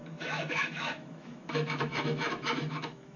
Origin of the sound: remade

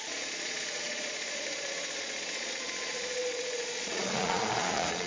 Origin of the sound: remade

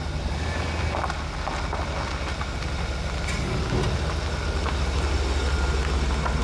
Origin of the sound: recorded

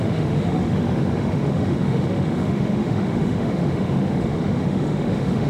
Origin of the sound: remade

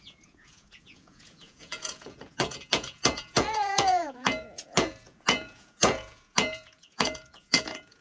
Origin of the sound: remade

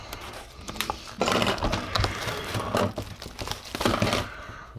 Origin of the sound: recorded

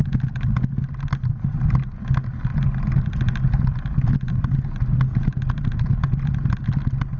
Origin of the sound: recorded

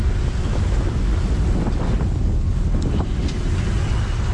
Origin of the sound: recorded